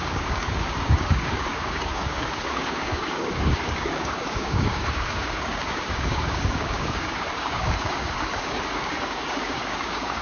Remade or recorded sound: remade